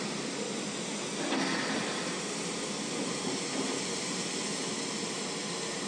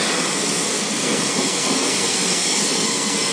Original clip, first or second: first